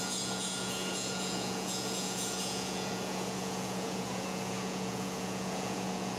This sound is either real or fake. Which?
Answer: fake